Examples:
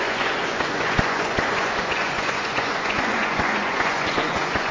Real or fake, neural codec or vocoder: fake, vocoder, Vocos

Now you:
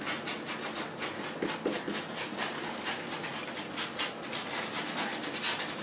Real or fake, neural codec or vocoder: real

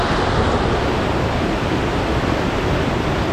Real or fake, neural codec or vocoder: real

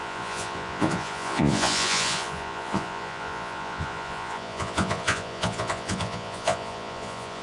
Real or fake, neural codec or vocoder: fake, vocoder, Vocos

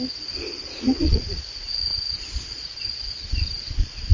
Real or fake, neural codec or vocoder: fake, vocoder, Vocos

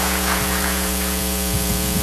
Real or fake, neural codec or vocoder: fake, vocoder, Vocos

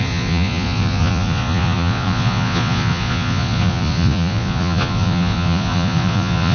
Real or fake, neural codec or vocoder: fake, vocoder, Vocos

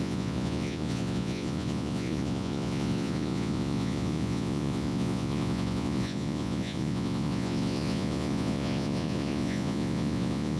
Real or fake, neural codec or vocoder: fake, vocoder, Vocos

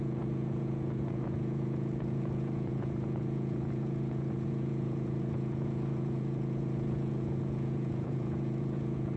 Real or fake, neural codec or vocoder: fake, vocoder, Vocos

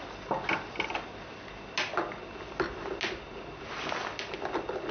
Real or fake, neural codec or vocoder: real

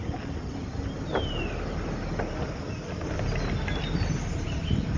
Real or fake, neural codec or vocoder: real